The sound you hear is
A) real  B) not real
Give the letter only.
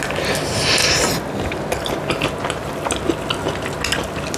A